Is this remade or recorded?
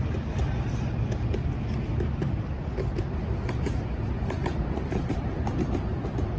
recorded